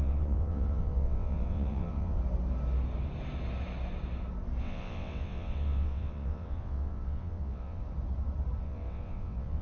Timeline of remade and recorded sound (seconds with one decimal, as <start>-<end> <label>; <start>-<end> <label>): 0.0-2.2 remade; 2.2-4.6 recorded; 4.6-7.8 remade; 7.8-8.6 recorded; 8.6-9.6 remade